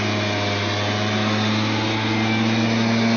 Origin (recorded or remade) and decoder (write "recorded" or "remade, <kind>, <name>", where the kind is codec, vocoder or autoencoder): recorded